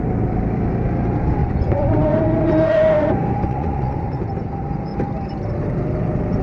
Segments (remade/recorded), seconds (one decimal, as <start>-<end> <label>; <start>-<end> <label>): 0.0-1.4 recorded; 1.4-4.2 remade; 4.2-6.4 recorded